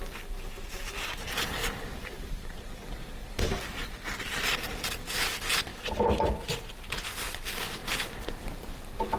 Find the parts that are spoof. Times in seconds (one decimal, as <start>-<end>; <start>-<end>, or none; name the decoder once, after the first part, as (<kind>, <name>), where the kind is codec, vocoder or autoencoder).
1.6-2.9 (vocoder, BigVGAN v2)